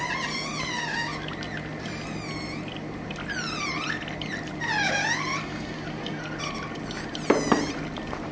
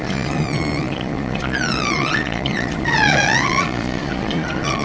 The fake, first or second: second